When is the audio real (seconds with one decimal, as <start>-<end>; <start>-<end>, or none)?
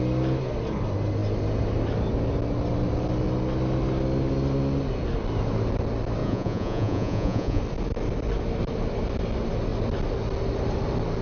0.0-6.2; 7.6-11.2